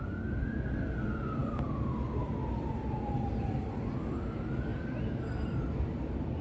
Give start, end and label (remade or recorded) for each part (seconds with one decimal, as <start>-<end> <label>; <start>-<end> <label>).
0.0-6.4 recorded